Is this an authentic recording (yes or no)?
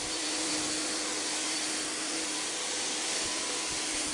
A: yes